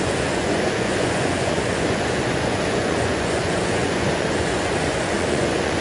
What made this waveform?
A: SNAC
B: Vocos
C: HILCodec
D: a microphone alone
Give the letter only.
B